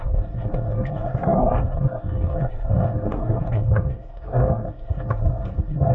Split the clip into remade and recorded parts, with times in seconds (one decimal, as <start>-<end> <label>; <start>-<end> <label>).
0.0-5.9 remade